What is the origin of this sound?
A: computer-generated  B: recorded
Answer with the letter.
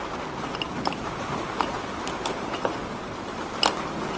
B